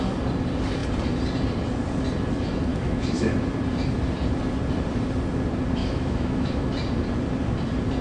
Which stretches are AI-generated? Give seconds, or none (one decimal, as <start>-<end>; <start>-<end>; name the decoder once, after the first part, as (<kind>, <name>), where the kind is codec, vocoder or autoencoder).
2.7-3.3 (autoencoder, DAC-VAE); 5.8-6.7